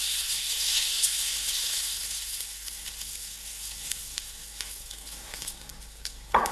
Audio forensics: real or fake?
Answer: fake